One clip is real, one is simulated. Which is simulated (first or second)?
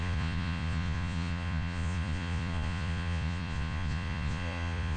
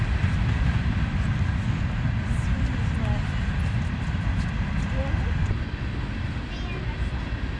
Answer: first